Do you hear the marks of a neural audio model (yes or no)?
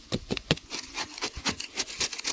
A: yes